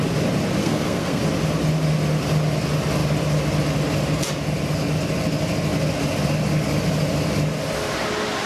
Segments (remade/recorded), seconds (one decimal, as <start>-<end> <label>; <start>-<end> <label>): 0.0-0.6 recorded; 0.6-1.2 remade; 1.2-8.5 recorded